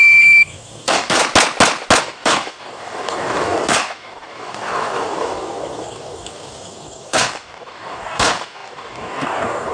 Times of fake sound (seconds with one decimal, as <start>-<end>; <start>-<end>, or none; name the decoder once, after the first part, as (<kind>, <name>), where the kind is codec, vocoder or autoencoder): 0.0-1.2 (codec, DAC); 2.0-9.7